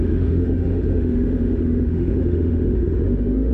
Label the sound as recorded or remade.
remade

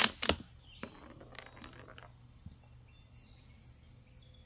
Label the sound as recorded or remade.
recorded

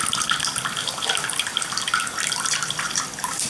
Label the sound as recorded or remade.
recorded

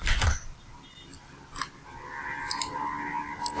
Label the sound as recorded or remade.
recorded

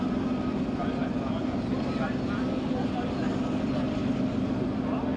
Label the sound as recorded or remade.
recorded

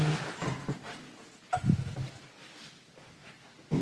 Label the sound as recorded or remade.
recorded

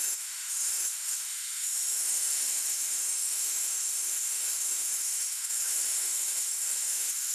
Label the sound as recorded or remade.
remade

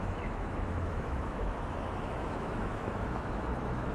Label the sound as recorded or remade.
remade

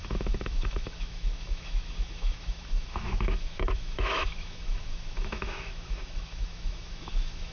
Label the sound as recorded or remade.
remade